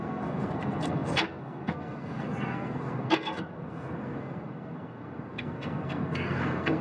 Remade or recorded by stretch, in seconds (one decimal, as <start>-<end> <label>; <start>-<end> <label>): 0.0-6.8 remade